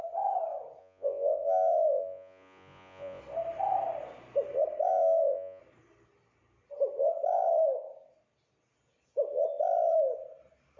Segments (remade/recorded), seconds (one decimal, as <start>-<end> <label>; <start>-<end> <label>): 0.0-0.8 recorded; 0.8-3.2 remade; 3.2-4.9 recorded; 4.9-5.6 remade; 5.6-10.8 recorded